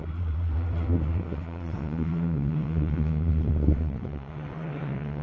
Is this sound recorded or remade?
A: remade